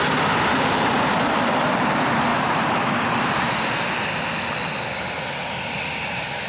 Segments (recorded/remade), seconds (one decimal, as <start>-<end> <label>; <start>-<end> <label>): 0.0-0.5 recorded; 0.5-1.9 remade; 1.9-2.3 recorded; 2.3-3.7 remade; 3.7-6.5 recorded